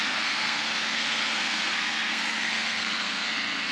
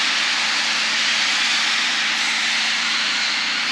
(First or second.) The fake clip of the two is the first